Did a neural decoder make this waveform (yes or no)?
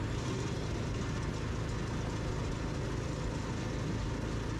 no